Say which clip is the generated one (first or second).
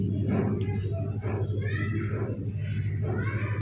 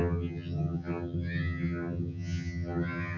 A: second